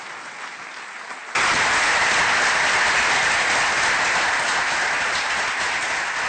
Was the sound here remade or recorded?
recorded